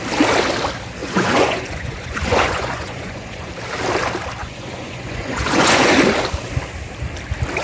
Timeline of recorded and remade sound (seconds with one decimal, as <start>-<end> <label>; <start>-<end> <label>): 0.0-1.0 recorded; 1.0-3.5 remade; 3.5-4.4 recorded; 4.4-5.9 remade; 5.9-7.6 recorded